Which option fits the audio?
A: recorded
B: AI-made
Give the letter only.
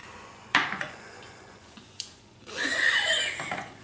B